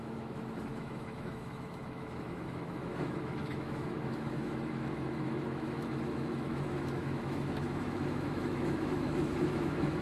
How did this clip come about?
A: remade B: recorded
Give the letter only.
A